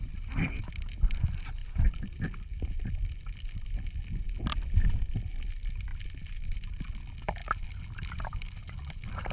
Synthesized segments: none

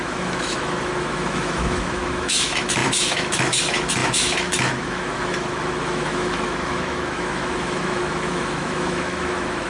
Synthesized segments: 0.0-9.7 (autoencoder, DAC-VAE)

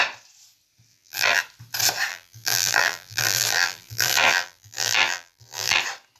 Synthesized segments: 0.9-1.4 (vocoder, BigVGAN v2); 2.1-5.8